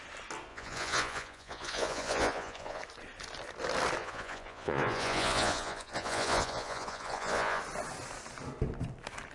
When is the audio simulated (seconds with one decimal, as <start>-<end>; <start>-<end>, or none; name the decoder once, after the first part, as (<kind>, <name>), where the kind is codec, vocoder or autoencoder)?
0.5-2.8 (vocoder, Vocos); 4.0-7.6